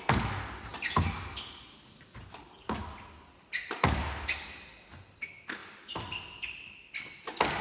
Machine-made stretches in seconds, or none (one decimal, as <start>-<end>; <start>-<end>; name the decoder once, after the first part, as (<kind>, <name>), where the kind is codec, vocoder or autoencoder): none